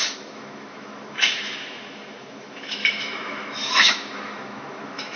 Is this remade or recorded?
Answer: remade